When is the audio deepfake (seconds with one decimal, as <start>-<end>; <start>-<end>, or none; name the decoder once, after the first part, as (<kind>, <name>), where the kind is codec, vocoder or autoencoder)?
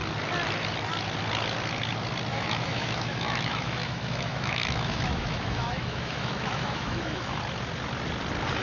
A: 2.3-7.4 (autoencoder, DAC-VAE)